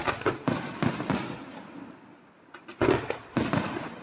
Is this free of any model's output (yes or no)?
yes